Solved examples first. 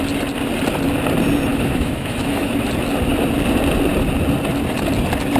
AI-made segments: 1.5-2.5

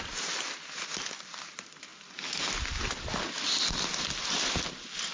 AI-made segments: none

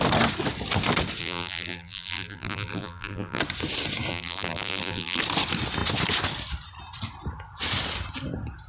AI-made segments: 1.2-3.4; 4.1-5.2

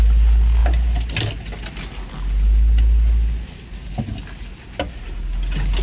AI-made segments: none

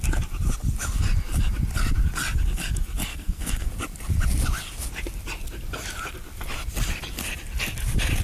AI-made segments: 3.1-3.7